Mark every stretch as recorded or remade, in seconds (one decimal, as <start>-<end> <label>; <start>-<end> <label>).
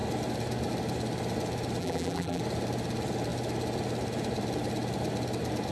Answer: 0.0-1.8 recorded; 1.8-2.4 remade; 2.4-5.7 recorded